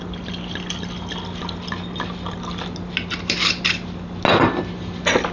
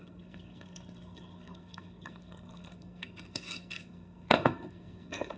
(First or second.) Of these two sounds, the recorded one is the first